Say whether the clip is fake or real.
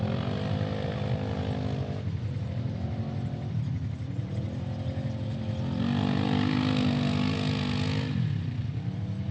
real